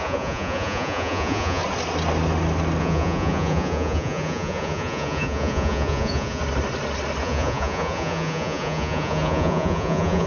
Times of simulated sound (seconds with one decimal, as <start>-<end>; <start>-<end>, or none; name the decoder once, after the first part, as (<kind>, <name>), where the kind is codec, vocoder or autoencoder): 0.0-1.6 (vocoder, Vocos); 2.8-6.4; 7.2-10.3